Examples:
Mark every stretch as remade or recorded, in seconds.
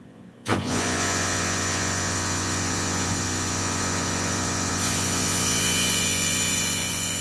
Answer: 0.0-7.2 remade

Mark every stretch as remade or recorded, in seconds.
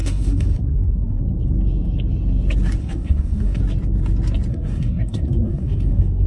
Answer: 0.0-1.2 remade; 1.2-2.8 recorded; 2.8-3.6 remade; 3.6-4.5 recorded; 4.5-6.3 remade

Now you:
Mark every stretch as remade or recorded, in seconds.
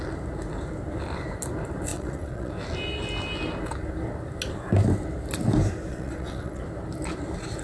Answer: 0.0-1.9 recorded; 1.9-2.5 remade; 2.5-5.9 recorded; 5.9-6.6 remade; 6.6-7.6 recorded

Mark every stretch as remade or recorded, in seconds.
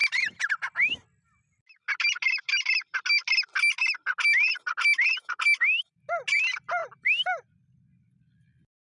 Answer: 0.0-0.5 remade; 0.5-8.8 recorded